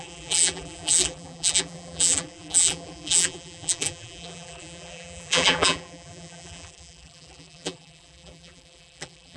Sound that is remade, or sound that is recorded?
remade